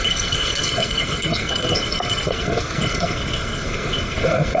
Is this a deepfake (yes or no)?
yes